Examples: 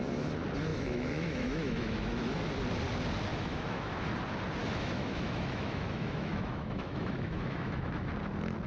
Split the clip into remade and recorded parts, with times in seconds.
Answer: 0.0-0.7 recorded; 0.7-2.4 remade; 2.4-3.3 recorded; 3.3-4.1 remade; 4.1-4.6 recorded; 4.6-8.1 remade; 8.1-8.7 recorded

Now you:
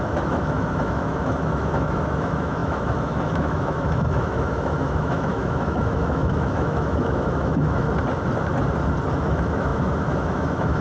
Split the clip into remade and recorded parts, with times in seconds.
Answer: 0.0-7.9 remade; 7.9-9.1 recorded; 9.1-10.8 remade

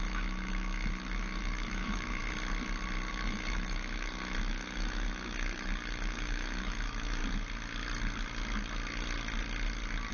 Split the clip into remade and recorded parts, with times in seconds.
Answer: 0.0-2.2 remade; 2.2-3.1 recorded; 3.1-7.2 remade; 7.2-10.1 recorded